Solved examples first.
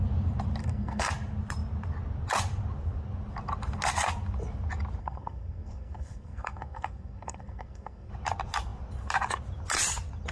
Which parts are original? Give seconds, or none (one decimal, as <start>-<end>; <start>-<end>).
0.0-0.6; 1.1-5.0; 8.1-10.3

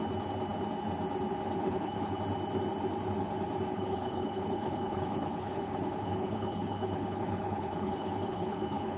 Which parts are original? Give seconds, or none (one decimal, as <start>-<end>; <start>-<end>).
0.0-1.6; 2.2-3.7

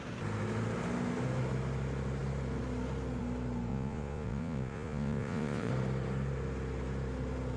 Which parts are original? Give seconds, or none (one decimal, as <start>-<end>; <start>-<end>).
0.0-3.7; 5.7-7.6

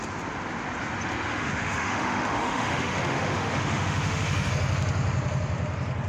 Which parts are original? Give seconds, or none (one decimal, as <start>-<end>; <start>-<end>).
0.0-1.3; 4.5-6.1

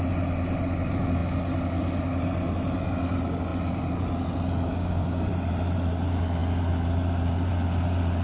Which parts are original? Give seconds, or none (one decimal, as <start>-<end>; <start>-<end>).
0.0-4.7; 5.3-8.2

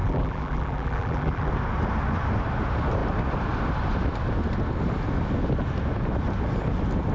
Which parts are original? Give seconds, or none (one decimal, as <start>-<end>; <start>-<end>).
1.5-7.1